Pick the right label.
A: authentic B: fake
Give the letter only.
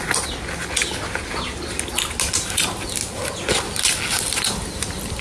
A